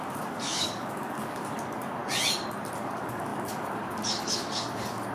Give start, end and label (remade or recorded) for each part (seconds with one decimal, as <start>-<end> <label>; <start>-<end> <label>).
0.0-2.0 remade; 2.0-2.8 recorded; 2.8-5.1 remade